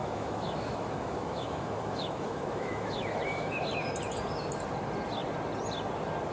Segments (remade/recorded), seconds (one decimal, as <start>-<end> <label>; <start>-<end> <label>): 0.0-3.6 remade; 3.6-6.3 recorded